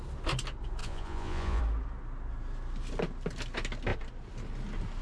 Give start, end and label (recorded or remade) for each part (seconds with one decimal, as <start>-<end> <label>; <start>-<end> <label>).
0.0-0.8 recorded; 0.8-1.6 remade; 1.6-5.0 recorded